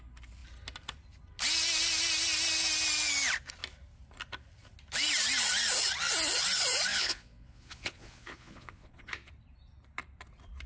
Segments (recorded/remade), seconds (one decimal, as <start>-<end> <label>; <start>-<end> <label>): 0.0-6.9 recorded; 6.9-9.3 remade; 9.3-10.7 recorded